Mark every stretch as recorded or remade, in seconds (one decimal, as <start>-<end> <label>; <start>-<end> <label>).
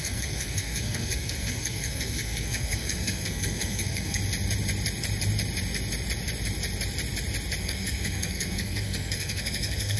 0.0-4.2 remade; 4.2-7.6 recorded; 7.6-10.0 remade